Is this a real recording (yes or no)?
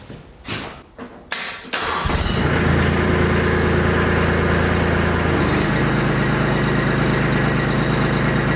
yes